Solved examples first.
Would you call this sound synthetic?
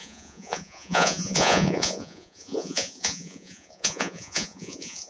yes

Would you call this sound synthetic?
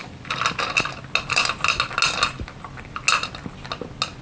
no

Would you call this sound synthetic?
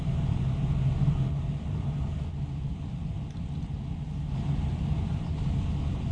no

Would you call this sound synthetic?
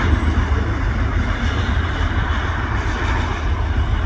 no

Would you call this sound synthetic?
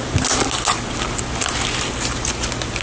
no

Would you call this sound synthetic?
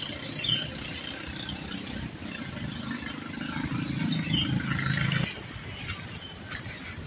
no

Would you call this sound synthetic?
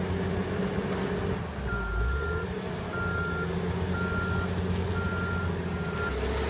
no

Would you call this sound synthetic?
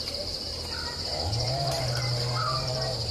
yes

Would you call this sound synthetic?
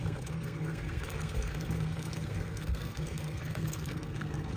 yes